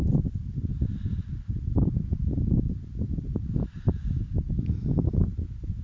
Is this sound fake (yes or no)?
yes